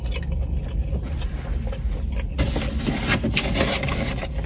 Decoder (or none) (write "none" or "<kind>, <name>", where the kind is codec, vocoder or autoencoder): none